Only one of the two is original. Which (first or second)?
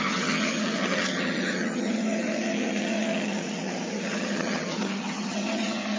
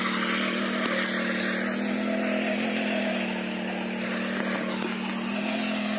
second